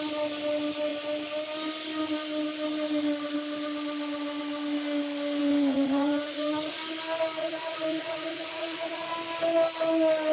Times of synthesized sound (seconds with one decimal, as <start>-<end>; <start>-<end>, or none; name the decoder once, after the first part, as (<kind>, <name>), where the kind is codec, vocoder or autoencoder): 5.4-6.8 (vocoder, Vocos); 7.4-9.1